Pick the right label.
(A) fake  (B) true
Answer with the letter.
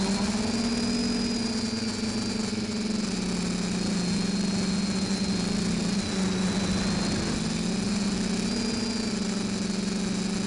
B